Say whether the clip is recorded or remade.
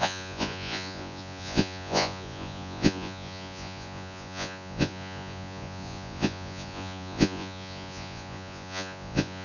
remade